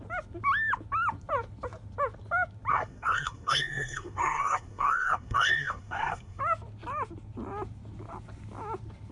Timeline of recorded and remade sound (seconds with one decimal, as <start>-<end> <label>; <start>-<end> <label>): 0.0-2.7 recorded; 2.7-6.4 remade; 6.4-9.1 recorded

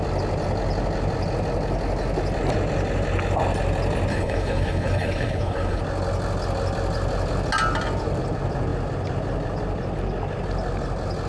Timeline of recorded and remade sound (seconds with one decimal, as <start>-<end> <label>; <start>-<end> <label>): 0.0-4.1 recorded; 4.1-5.8 remade; 5.8-11.3 recorded

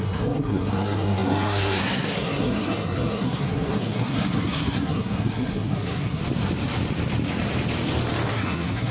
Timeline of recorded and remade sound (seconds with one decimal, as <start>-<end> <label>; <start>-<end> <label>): 0.0-6.2 remade; 6.2-8.3 recorded; 8.3-8.9 remade

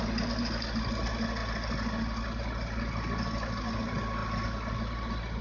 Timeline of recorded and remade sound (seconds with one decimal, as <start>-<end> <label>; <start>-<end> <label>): 0.0-5.4 recorded

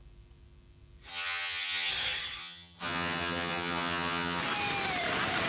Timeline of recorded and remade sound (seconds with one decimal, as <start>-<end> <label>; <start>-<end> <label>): 0.0-1.1 recorded; 1.1-1.9 remade; 1.9-2.4 recorded; 2.4-4.4 remade; 4.4-5.5 recorded

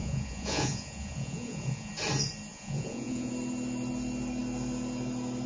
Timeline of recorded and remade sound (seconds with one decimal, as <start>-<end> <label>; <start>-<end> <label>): 0.0-1.9 remade; 1.9-2.5 recorded; 2.5-3.3 remade; 3.3-5.5 recorded

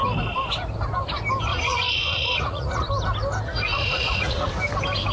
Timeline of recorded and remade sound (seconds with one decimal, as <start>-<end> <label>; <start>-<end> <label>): 0.0-1.5 recorded; 1.5-2.9 remade; 2.9-3.7 recorded; 3.7-4.5 remade; 4.5-5.1 recorded

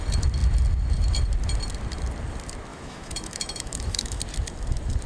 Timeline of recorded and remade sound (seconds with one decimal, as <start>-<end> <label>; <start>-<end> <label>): 0.0-2.7 recorded; 2.7-4.2 remade; 4.2-5.1 recorded